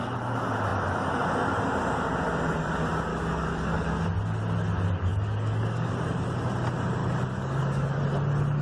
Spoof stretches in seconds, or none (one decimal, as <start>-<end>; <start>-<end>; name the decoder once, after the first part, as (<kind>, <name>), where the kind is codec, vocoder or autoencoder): 3.1-4.0 (codec, DAC); 5.1-5.9; 7.0-8.0